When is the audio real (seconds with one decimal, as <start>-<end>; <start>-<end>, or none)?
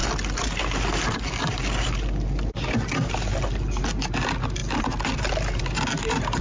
0.0-6.4